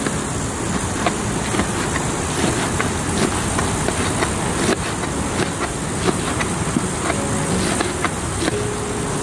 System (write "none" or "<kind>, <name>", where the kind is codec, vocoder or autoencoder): none